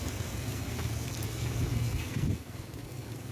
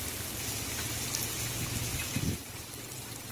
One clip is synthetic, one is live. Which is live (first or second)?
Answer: second